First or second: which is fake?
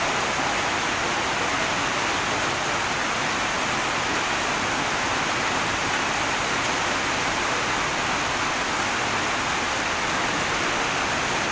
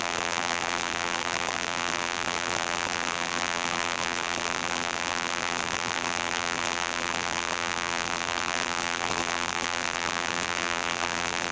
second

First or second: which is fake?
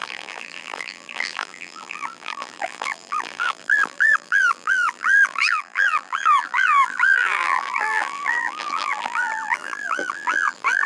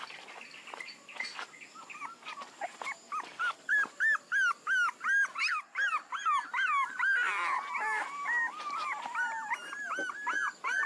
first